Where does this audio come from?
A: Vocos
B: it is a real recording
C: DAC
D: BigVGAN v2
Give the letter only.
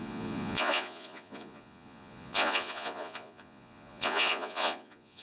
A